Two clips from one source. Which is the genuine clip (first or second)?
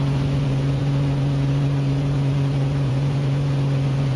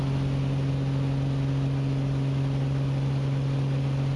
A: second